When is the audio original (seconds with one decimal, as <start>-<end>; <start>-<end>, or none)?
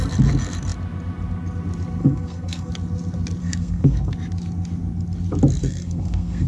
0.0-2.0; 2.7-3.4; 4.1-5.6